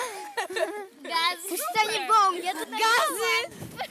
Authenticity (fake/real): real